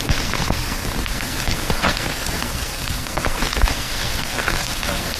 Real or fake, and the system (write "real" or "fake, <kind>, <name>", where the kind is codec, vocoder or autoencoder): fake, codec, SNAC